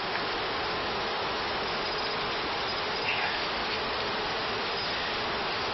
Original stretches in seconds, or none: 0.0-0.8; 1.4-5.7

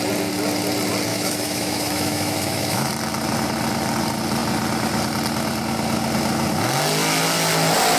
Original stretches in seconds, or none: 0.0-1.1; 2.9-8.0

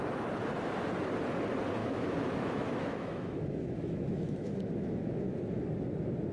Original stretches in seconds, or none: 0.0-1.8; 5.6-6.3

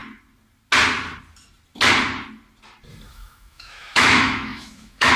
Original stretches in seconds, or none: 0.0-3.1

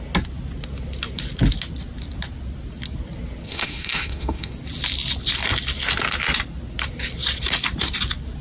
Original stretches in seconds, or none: 0.0-3.5; 4.5-8.4